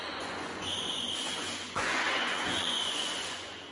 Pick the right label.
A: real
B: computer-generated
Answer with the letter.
B